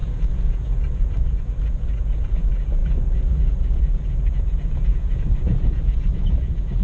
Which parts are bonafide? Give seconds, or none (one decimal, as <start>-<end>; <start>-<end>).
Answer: none

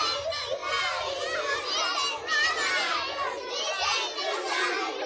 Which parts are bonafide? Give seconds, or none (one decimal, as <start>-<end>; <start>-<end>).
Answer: 0.0-5.1

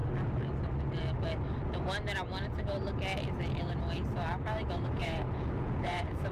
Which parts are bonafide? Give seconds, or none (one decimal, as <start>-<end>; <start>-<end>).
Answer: 0.0-5.0

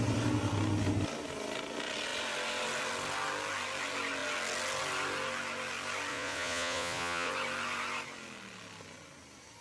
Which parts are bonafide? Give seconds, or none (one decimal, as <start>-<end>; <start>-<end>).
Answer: 0.0-6.1; 7.3-9.6

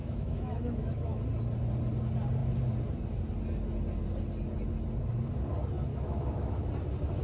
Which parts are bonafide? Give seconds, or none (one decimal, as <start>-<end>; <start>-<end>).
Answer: 1.2-5.9; 6.7-7.2

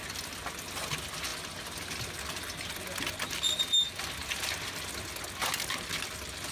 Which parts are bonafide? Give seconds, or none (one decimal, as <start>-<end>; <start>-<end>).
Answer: 0.0-6.5

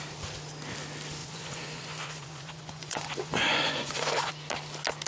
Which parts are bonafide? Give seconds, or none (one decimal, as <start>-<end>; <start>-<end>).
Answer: 0.0-1.2; 4.3-5.1